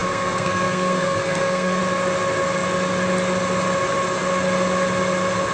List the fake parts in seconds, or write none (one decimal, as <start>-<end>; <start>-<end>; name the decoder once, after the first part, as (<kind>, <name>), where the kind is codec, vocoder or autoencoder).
0.0-1.8 (codec, SNAC)